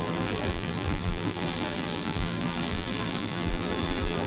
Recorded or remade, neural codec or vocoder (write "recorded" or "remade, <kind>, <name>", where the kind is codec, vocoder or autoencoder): remade, vocoder, BigVGAN v2